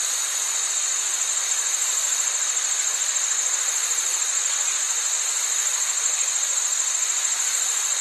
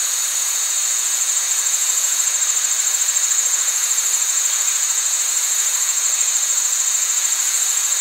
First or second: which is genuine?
first